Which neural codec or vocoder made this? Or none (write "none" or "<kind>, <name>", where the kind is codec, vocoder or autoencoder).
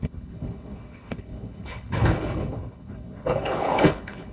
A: codec, HILCodec